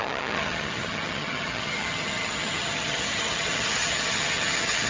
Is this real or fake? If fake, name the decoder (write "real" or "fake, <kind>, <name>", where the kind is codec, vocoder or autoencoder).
fake, vocoder, HiFi-GAN